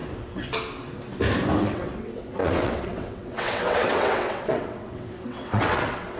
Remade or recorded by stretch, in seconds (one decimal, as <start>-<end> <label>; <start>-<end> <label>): 0.0-1.6 recorded; 1.6-6.2 remade